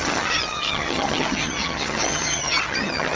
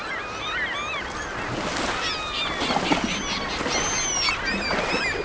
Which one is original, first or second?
second